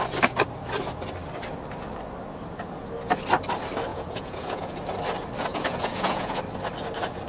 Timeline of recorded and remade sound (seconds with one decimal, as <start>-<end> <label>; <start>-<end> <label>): 0.0-3.9 recorded; 3.9-4.7 remade; 4.7-5.5 recorded; 5.5-6.4 remade; 6.4-7.3 recorded